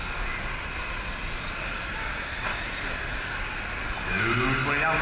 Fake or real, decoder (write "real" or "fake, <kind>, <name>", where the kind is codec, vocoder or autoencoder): real